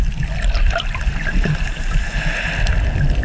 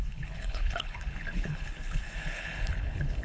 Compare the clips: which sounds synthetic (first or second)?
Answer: second